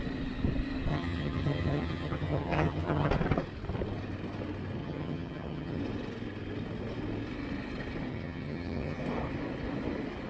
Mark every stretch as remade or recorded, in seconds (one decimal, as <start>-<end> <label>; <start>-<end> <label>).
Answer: 0.0-0.9 recorded; 0.9-3.1 remade; 3.1-4.8 recorded; 4.8-5.8 remade; 5.8-8.1 recorded; 8.1-9.0 remade; 9.0-10.3 recorded